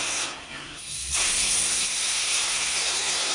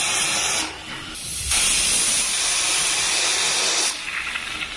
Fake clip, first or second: first